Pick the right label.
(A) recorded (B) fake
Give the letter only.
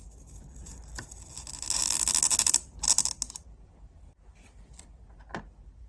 A